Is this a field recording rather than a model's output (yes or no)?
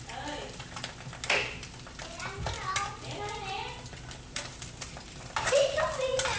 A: yes